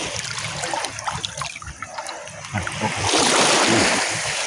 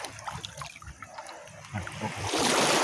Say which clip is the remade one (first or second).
first